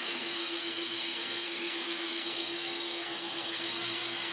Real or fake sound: fake